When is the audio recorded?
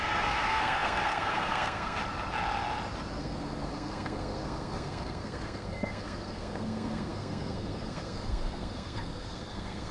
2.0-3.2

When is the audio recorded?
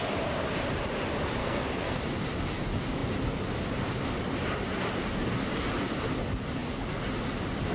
0.0-1.4; 2.0-7.7